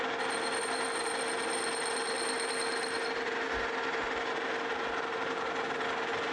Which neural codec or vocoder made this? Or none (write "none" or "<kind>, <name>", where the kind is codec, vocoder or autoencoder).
none